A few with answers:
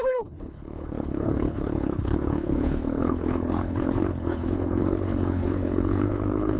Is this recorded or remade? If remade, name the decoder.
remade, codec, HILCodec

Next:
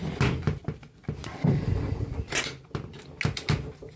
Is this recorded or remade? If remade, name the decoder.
recorded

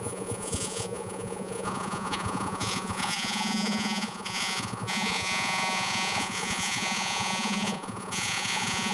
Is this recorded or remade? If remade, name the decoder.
remade, vocoder, Vocos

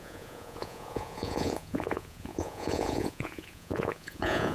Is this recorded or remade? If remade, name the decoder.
remade, vocoder, Vocos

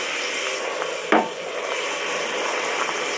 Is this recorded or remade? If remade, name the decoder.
recorded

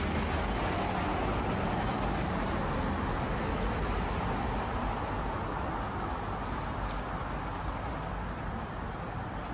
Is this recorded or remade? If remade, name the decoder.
recorded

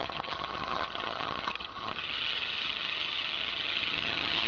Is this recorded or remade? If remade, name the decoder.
remade, vocoder, HiFi-GAN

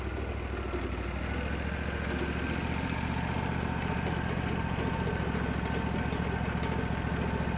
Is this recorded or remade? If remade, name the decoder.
recorded